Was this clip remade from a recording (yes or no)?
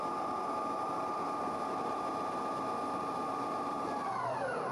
yes